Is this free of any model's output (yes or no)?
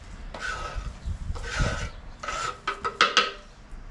yes